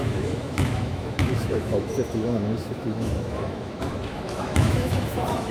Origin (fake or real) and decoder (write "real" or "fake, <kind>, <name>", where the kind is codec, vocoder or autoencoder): fake, autoencoder, DAC-VAE